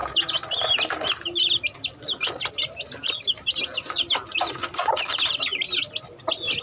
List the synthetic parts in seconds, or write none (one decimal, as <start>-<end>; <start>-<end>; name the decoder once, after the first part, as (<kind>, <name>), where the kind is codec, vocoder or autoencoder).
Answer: none